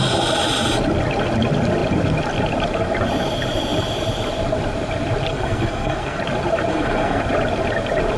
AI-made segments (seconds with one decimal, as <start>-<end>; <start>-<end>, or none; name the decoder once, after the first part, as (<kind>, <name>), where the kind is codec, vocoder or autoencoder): 5.3-6.2 (codec, SNAC); 6.7-7.2